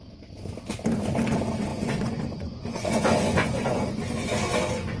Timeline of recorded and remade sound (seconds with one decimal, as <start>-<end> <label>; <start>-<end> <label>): 0.0-1.7 recorded; 1.7-5.0 remade